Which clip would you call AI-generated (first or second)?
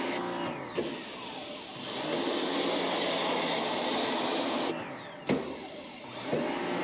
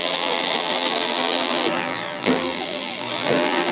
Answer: second